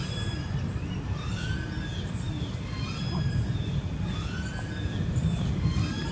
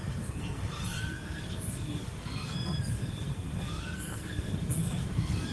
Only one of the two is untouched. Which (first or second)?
first